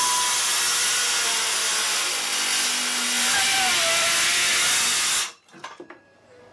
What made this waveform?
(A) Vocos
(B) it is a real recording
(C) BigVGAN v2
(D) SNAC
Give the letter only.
B